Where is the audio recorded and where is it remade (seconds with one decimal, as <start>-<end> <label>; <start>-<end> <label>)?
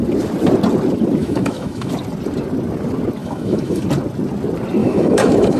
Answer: 0.0-1.2 recorded; 1.2-1.9 remade; 1.9-3.2 recorded; 3.2-3.8 remade; 3.8-4.8 recorded; 4.8-5.6 remade